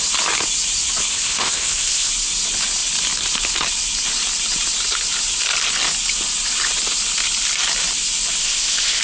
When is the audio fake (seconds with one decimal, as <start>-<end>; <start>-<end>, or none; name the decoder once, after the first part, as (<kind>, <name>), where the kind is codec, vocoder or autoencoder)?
1.1-2.1 (codec, ZipCodec); 8.4-9.0